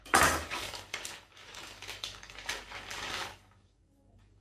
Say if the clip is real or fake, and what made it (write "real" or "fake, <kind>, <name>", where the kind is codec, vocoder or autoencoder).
fake, codec, DAC